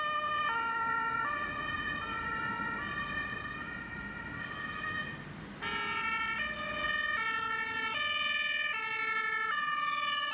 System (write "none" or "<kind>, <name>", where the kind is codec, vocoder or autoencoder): none